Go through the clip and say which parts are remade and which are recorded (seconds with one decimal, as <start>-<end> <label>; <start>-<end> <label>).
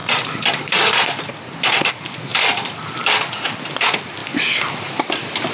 0.0-2.3 recorded; 2.3-3.7 remade; 3.7-5.5 recorded